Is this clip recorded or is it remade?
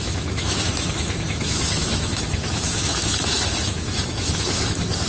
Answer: remade